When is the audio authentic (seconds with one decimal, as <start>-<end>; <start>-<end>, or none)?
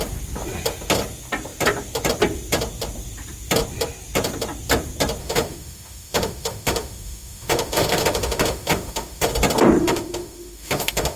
0.0-5.2; 9.3-9.8